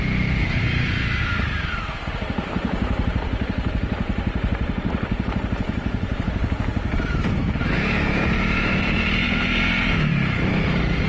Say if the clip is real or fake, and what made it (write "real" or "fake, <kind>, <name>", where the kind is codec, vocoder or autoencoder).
fake, vocoder, BigVGAN v2